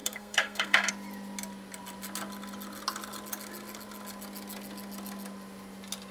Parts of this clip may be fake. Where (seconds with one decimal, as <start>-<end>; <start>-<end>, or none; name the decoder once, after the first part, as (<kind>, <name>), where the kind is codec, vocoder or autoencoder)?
0.0-0.9 (codec, SNAC)